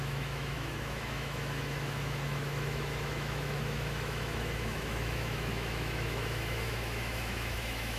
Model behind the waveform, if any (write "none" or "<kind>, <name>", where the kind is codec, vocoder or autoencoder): autoencoder, DAC-VAE